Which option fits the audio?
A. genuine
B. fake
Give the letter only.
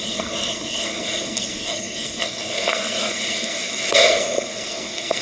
B